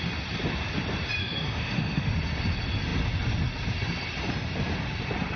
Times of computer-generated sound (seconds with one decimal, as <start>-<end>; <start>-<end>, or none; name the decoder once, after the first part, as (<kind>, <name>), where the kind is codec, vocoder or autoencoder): 1.2-2.1 (autoencoder, DAC-VAE)